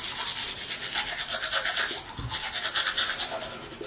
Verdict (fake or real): real